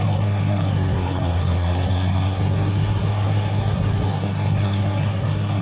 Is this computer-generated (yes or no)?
yes